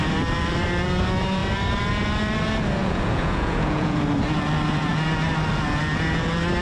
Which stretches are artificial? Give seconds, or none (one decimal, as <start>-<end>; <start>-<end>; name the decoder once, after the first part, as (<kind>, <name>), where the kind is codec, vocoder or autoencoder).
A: 2.8-4.0 (vocoder, Vocos)